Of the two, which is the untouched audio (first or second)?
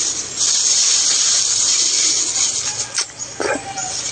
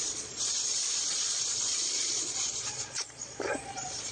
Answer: first